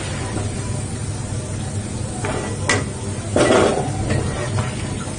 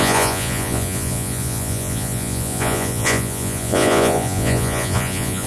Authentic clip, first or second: first